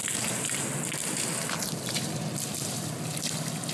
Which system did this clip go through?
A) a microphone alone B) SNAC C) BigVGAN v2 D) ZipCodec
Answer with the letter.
A